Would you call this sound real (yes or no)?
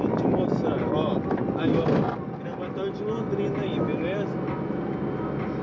yes